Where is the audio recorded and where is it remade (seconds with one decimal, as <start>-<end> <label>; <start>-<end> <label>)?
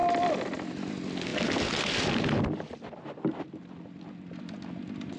0.0-5.2 recorded